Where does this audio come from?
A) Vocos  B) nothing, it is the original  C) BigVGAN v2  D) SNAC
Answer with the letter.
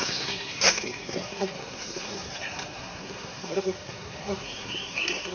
D